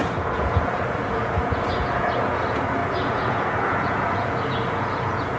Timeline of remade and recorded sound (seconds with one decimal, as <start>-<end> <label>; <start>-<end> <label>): 0.0-5.4 remade